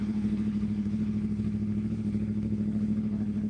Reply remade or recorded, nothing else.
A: remade